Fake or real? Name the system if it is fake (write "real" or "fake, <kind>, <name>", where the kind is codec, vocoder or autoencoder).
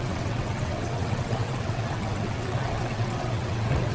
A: fake, vocoder, WaveNeXt